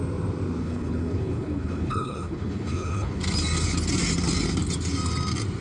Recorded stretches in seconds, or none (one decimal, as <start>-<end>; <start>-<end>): 0.0-0.6; 3.2-5.6